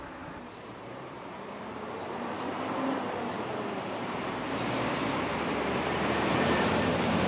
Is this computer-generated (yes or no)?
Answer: yes